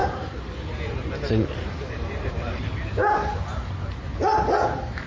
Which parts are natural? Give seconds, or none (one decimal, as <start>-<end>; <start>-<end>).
2.6-5.1